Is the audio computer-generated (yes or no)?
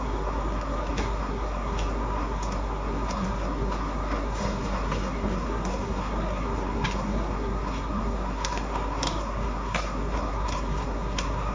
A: yes